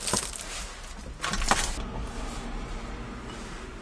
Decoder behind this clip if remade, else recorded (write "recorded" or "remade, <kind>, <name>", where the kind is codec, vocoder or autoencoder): recorded